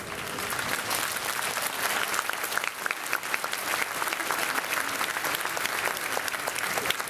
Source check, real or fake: real